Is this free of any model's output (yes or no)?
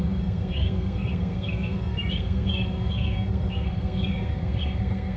no